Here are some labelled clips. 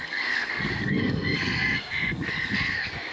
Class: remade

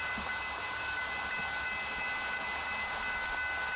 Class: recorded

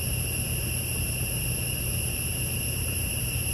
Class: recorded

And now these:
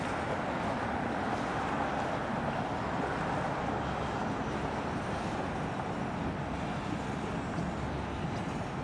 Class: recorded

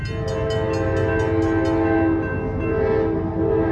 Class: recorded